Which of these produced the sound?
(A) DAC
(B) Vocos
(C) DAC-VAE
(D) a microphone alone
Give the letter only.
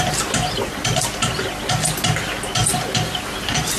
D